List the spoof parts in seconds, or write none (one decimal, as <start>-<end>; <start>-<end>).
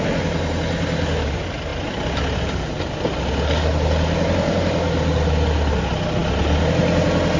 none